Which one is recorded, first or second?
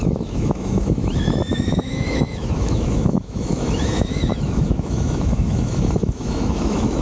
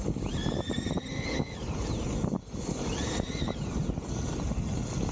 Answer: second